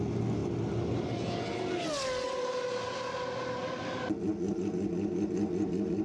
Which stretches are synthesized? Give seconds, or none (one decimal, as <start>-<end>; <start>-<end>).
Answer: none